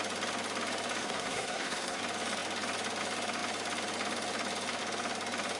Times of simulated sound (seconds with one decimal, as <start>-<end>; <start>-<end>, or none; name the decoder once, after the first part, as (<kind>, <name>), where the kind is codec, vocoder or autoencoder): 1.0-2.0 (codec, SNAC)